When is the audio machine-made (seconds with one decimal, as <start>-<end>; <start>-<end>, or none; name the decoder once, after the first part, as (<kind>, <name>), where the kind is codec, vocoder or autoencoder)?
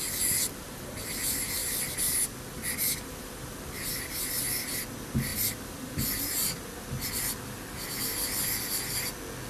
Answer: 1.6-4.0 (vocoder, BigVGAN v2); 5.3-8.0